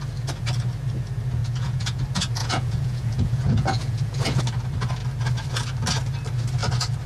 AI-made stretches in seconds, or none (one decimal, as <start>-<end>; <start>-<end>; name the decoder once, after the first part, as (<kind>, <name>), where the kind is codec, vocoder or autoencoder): 1.4-2.0 (vocoder, Vocos); 2.4-4.4